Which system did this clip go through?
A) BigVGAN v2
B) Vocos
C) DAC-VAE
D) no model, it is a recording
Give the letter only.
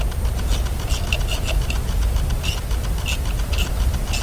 D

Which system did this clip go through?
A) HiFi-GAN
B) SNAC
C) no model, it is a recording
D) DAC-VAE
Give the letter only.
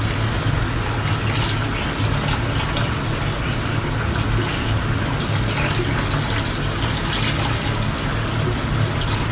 C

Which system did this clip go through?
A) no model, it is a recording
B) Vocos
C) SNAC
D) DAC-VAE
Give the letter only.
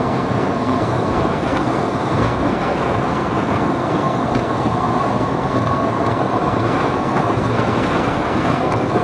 C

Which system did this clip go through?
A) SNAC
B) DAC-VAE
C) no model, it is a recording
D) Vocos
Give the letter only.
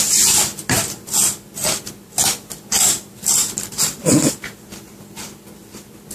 C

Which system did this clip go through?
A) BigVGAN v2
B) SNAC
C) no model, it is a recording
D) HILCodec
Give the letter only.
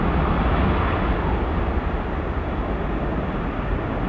C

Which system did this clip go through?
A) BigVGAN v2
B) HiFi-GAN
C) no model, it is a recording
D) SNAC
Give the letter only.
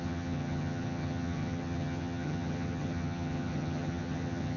B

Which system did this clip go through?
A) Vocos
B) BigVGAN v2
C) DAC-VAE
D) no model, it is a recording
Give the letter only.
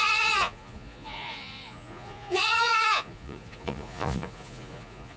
A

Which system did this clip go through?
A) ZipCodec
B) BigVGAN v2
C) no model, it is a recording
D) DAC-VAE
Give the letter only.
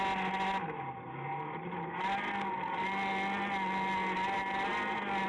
C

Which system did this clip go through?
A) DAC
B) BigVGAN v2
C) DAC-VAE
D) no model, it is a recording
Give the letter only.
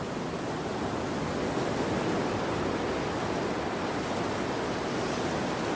D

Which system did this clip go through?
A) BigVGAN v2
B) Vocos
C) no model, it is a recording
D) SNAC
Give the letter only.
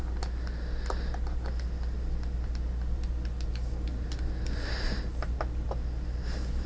C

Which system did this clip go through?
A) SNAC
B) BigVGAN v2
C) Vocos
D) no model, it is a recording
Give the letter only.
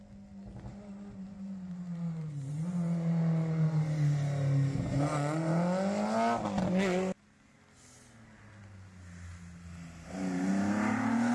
D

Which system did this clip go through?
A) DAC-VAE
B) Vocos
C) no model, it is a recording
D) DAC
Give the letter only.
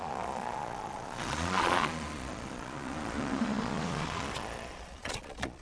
B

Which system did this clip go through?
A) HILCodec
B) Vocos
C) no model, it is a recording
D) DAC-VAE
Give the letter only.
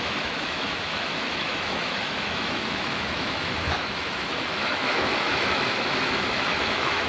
D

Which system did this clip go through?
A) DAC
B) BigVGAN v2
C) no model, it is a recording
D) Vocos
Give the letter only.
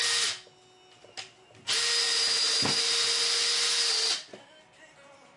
C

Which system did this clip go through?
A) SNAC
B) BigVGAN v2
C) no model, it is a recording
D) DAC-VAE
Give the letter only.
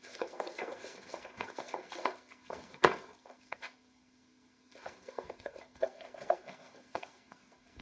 A